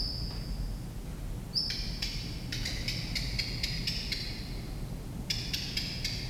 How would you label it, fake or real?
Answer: real